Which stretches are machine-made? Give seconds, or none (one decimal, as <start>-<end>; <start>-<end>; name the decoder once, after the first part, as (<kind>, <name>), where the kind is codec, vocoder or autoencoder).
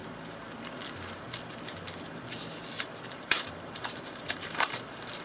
3.1-5.2 (vocoder, BigVGAN v2)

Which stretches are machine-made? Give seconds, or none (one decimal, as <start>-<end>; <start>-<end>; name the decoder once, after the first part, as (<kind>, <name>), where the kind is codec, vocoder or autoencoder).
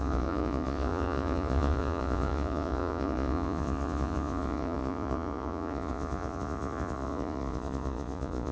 0.0-8.5 (vocoder, Vocos)